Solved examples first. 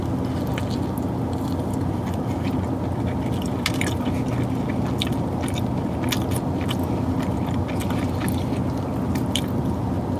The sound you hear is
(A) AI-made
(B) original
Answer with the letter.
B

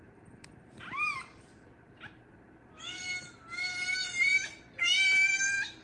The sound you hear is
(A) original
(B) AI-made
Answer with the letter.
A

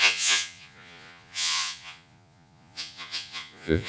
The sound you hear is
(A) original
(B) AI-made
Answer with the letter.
B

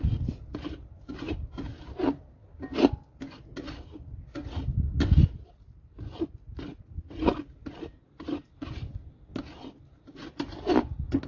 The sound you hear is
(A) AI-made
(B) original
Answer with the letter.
B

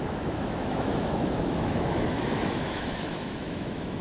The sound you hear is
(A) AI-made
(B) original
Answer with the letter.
A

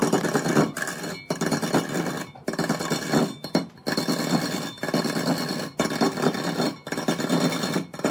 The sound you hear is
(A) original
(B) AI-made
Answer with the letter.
A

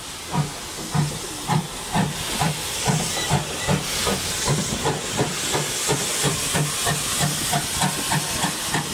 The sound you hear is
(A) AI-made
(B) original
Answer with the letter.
B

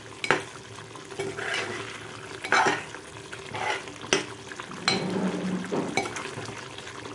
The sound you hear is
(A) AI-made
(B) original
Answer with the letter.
B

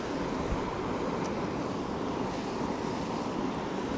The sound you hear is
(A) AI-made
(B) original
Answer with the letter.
B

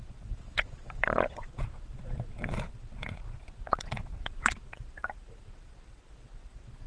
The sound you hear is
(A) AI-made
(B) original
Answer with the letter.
A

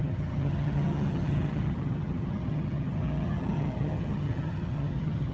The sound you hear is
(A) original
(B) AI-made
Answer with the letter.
B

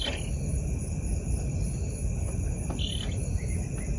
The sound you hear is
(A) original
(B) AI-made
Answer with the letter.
A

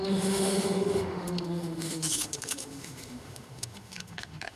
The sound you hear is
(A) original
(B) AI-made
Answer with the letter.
B